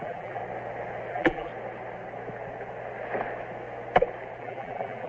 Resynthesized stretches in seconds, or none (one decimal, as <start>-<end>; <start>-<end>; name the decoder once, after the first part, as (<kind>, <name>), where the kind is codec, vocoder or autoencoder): 0.0-0.4 (vocoder, BigVGAN v2); 1.1-1.5; 4.4-5.1